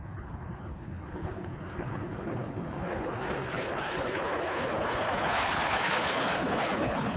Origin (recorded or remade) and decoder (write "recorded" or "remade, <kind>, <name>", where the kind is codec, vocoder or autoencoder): remade, codec, HILCodec